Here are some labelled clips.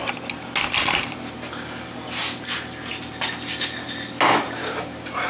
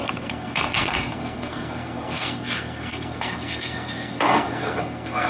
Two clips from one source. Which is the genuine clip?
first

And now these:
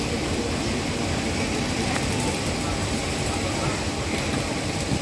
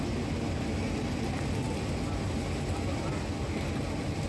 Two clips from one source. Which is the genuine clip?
second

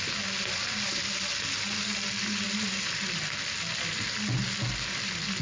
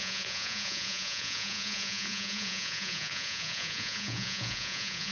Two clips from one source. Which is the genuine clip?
first